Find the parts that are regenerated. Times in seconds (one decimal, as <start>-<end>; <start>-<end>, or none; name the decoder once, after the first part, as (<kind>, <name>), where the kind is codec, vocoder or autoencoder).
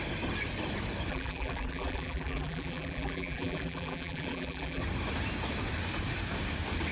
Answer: 1.1-4.8 (vocoder, BigVGAN v2)